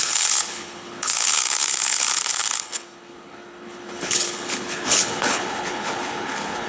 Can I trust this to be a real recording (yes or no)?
no